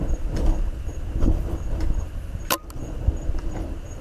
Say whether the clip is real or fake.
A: real